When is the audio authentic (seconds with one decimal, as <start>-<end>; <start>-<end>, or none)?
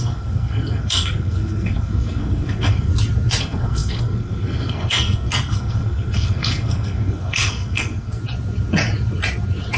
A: 2.9-3.4; 8.2-9.8